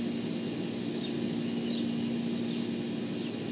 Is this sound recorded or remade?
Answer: recorded